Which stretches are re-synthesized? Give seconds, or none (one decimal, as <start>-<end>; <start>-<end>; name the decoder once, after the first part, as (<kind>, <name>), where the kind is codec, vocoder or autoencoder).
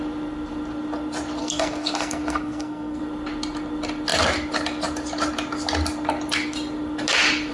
1.4-3.0 (codec, SNAC)